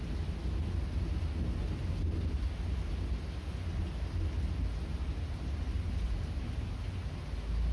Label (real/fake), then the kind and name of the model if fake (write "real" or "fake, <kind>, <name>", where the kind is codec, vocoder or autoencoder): real